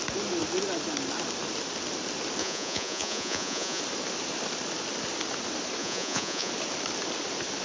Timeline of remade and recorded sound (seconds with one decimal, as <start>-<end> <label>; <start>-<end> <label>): 0.0-2.4 recorded; 2.4-3.8 remade; 3.8-5.8 recorded; 5.8-6.5 remade; 6.5-7.6 recorded